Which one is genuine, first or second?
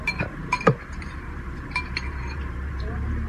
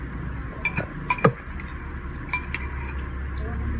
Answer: second